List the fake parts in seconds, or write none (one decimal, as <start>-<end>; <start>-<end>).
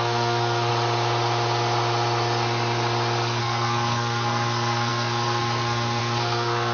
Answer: 0.0-0.7; 3.4-6.7